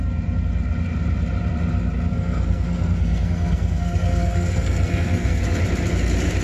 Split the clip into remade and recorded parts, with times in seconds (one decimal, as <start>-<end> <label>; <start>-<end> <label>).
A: 0.0-2.1 recorded; 2.1-5.4 remade; 5.4-6.4 recorded